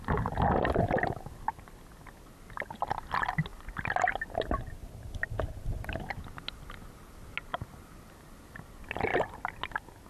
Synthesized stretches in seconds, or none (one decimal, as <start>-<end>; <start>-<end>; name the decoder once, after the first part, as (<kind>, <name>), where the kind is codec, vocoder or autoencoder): 7.5-8.1 (vocoder, BigVGAN v2)